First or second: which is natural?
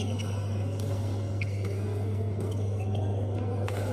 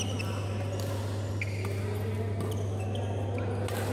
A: second